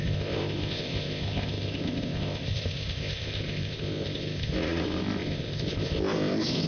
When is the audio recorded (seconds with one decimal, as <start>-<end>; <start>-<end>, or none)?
none